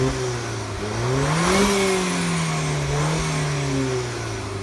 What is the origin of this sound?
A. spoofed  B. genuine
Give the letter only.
B